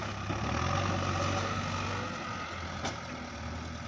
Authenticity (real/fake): real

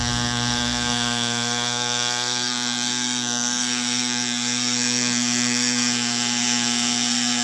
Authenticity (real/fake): fake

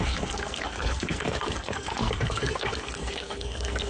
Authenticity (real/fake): fake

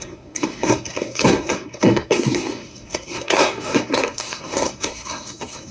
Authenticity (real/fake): fake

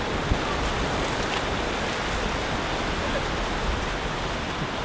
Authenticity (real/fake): real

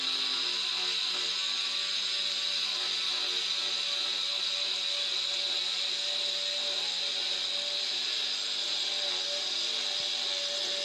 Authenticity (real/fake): real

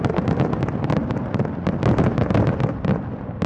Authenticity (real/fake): real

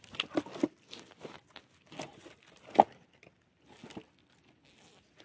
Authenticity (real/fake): real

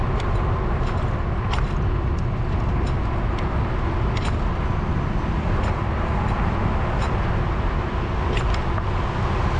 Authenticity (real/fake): real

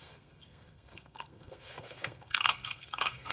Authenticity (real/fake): fake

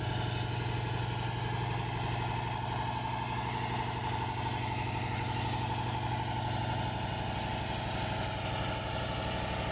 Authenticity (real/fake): real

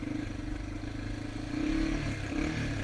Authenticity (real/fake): real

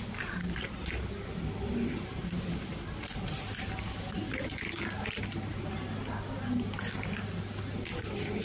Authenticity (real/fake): real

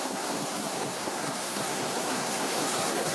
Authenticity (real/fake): fake